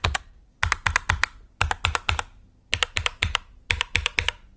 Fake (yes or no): no